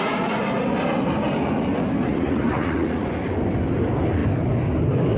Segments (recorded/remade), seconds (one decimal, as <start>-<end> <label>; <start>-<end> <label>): 0.0-2.1 recorded; 2.1-3.1 remade; 3.1-5.2 recorded